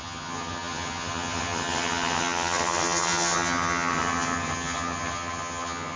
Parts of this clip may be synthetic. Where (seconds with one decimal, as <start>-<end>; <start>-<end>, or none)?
0.0-6.0

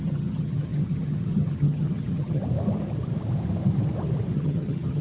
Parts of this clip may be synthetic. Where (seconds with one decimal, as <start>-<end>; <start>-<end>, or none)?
0.0-2.4; 4.3-5.0

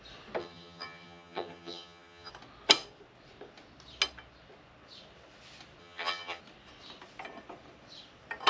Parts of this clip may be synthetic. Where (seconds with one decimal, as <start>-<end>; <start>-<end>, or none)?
0.4-2.3; 5.8-6.4

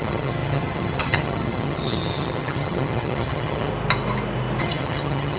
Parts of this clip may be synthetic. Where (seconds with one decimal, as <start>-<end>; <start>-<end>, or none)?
0.0-3.7; 4.6-5.4

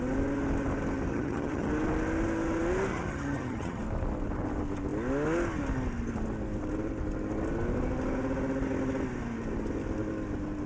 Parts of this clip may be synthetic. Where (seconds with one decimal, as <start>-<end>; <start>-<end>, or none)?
1.1-1.7; 2.9-3.8

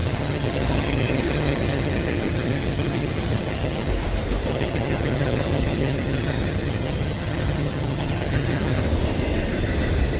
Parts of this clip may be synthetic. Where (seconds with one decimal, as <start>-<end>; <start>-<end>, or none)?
0.0-3.9; 4.5-8.8

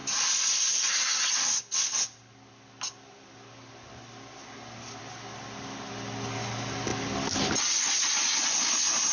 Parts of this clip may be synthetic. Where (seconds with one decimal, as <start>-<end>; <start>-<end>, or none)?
none